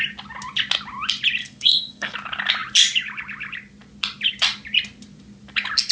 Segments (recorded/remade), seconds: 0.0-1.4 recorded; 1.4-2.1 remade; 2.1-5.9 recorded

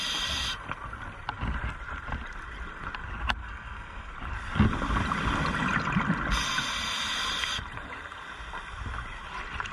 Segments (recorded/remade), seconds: 0.0-3.4 recorded; 3.4-4.1 remade; 4.1-9.7 recorded

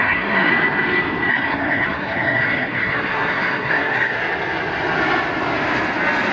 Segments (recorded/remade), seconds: 0.0-0.5 remade; 0.5-1.3 recorded; 1.3-4.2 remade; 4.2-6.3 recorded

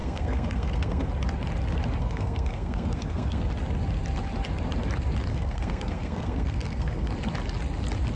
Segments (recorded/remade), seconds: 0.0-1.1 remade; 1.1-2.0 recorded; 2.0-3.5 remade; 3.5-5.3 recorded; 5.3-7.1 remade; 7.1-8.2 recorded